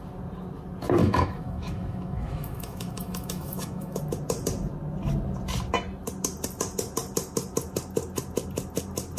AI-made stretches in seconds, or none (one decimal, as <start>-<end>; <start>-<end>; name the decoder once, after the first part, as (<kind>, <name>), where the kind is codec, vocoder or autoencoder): 1.0-4.0 (autoencoder, DAC-VAE)

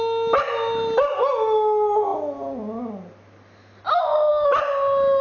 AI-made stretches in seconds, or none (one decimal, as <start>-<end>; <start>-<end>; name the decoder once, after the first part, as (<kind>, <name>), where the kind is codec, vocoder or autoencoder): none

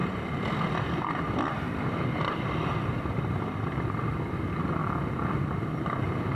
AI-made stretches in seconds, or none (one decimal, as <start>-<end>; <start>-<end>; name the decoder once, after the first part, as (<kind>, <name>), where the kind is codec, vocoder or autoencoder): 0.0-3.8 (vocoder, BigVGAN v2); 4.8-5.4

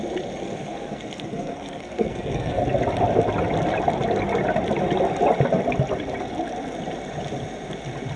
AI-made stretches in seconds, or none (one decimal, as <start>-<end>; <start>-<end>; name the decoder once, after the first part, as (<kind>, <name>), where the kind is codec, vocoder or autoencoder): 0.4-2.6 (codec, SNAC)

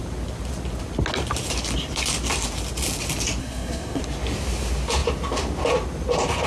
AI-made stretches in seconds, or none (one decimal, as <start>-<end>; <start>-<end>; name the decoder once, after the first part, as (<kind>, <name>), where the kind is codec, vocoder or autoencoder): 3.4-4.0 (codec, SNAC)